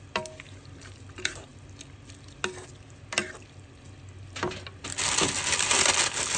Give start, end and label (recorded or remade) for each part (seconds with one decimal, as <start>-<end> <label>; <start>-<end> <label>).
0.0-6.4 recorded